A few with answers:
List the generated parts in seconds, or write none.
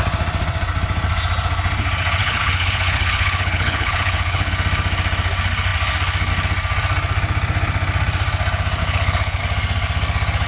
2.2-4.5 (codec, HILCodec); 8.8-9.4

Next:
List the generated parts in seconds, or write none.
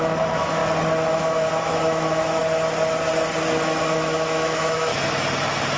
0.0-0.6 (autoencoder, DAC-VAE); 1.1-2.4; 3.6-4.9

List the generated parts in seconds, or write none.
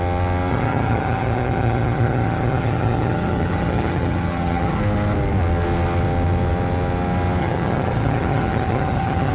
0.5-4.8 (vocoder, HiFi-GAN); 7.4-9.3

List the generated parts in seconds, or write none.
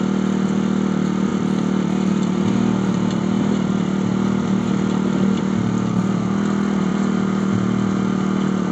6.9-7.5 (vocoder, BigVGAN v2)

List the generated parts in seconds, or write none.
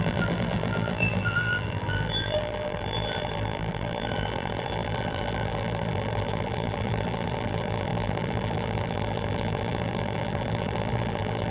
0.0-11.5 (vocoder, BigVGAN v2)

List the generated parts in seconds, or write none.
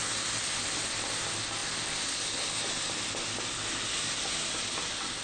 none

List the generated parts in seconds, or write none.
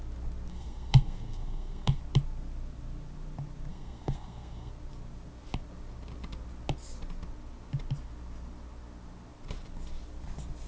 0.5-2.0 (codec, SNAC); 3.7-4.7